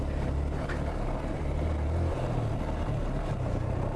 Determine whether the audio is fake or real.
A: real